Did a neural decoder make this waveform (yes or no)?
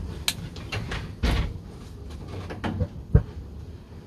no